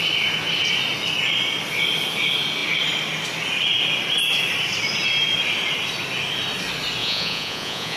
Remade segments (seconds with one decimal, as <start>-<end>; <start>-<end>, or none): 7.0-8.0